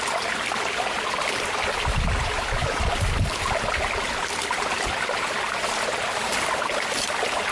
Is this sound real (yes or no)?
yes